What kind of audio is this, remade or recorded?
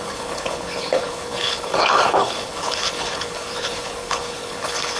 remade